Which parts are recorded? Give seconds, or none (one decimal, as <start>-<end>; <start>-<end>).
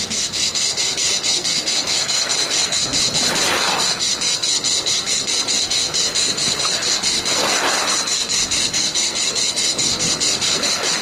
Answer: 2.9-3.5